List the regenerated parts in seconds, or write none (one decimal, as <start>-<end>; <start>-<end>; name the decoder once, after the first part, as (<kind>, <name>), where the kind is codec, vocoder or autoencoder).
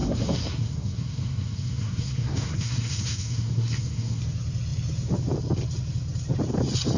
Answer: 0.0-4.2 (codec, SNAC)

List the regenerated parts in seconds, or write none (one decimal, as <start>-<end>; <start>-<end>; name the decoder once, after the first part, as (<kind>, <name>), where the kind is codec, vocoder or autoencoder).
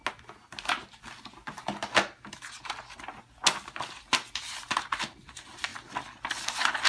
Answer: none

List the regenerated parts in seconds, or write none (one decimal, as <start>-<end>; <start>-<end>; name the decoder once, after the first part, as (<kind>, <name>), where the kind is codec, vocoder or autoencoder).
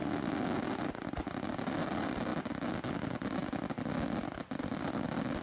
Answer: none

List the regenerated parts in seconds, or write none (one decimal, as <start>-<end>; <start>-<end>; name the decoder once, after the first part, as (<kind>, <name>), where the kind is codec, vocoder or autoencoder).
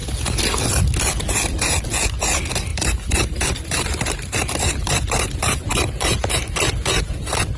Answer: 2.7-6.3 (vocoder, BigVGAN v2)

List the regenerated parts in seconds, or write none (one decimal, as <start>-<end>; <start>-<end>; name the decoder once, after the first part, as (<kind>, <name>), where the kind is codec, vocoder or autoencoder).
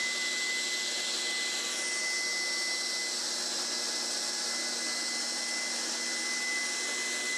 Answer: none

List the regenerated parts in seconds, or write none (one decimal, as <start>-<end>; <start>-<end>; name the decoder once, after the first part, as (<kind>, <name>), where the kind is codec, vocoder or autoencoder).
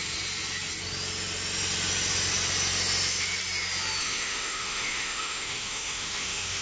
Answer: 4.0-6.6 (autoencoder, DAC-VAE)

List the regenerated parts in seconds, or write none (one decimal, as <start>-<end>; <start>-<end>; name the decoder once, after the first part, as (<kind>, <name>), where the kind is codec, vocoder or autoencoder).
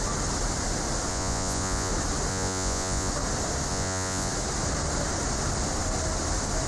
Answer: 1.1-1.9 (vocoder, Vocos); 2.3-3.1; 3.7-4.3